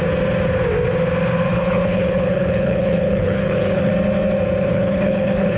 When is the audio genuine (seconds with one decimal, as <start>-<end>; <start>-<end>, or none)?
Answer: 0.0-1.5; 3.9-4.7

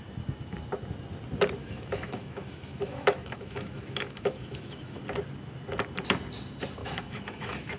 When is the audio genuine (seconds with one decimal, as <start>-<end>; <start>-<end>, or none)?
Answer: 0.0-1.6; 5.0-6.8

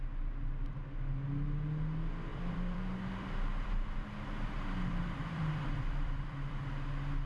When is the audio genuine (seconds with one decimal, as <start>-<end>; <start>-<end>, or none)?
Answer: 0.0-2.3; 6.6-7.3

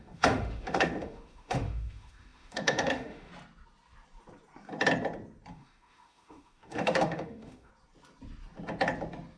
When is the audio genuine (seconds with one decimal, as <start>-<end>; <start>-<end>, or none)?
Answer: 3.3-5.5; 7.7-9.4

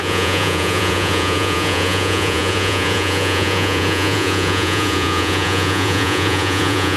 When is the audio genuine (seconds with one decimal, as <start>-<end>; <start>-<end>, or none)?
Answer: none

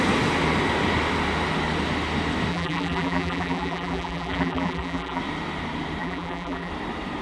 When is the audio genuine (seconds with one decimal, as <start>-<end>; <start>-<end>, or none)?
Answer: 0.0-2.5; 5.2-6.0; 6.7-7.2

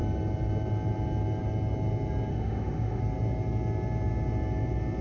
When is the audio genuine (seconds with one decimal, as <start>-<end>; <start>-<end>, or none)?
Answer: 0.0-2.3; 3.0-5.0

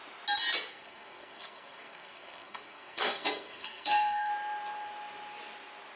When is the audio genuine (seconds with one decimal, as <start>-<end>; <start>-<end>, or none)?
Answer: 0.0-0.7; 4.3-6.0